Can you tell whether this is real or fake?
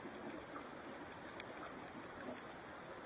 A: real